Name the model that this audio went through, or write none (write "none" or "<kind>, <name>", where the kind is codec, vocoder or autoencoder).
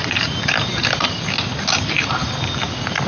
none